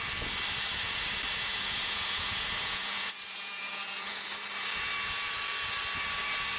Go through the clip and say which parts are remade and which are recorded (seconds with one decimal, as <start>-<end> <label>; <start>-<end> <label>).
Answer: 0.0-1.5 recorded; 1.5-4.2 remade; 4.2-6.6 recorded